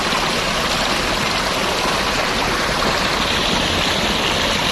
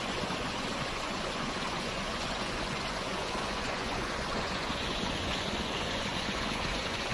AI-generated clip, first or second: second